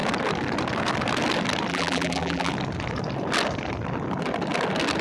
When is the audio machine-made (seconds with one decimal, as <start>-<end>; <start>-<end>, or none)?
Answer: 1.7-2.5